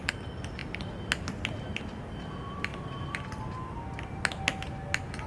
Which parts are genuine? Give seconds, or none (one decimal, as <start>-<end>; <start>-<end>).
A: 0.0-5.3